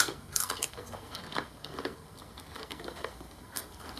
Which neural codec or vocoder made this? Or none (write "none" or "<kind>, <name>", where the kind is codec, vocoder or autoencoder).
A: codec, SNAC